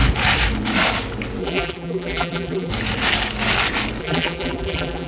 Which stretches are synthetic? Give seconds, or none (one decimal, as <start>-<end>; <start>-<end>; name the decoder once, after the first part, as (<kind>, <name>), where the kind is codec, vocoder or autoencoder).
1.4-2.7 (vocoder, BigVGAN v2); 4.0-5.1